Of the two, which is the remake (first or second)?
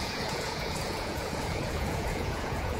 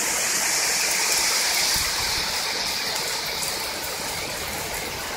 first